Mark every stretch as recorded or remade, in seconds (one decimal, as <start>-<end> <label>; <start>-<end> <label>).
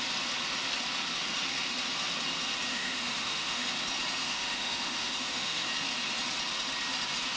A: 0.0-2.7 recorded; 2.7-3.7 remade; 3.7-4.2 recorded; 4.2-5.7 remade; 5.7-7.4 recorded